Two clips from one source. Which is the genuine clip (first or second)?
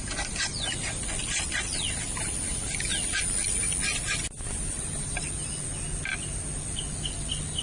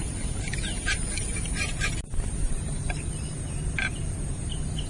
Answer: first